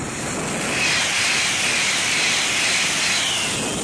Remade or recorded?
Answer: recorded